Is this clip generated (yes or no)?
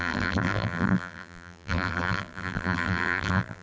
yes